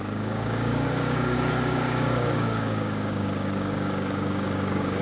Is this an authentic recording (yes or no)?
no